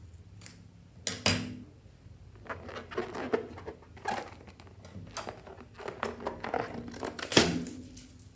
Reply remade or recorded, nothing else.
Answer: recorded